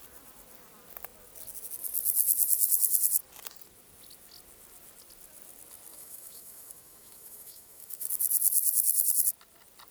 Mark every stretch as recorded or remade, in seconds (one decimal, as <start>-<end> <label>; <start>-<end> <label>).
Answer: 0.0-5.9 recorded; 5.9-8.1 remade; 8.1-9.9 recorded